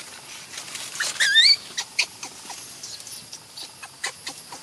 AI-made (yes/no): no